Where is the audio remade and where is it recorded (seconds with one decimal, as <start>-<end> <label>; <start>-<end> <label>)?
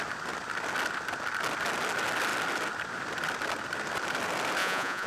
0.0-4.6 recorded; 4.6-5.1 remade